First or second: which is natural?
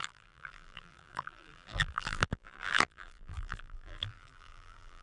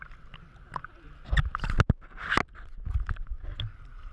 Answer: second